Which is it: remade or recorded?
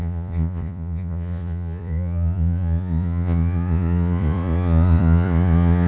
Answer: remade